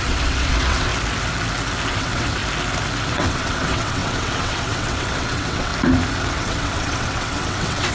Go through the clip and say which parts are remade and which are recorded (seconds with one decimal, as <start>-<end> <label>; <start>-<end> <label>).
0.0-0.9 remade; 0.9-1.9 recorded; 1.9-2.4 remade; 2.4-3.1 recorded; 3.1-5.7 remade; 5.7-6.3 recorded; 6.3-7.9 remade